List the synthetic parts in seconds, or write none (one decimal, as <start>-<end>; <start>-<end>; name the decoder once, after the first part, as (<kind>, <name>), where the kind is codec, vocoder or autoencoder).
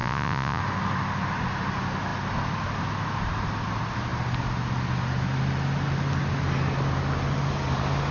0.0-0.6 (vocoder, Vocos)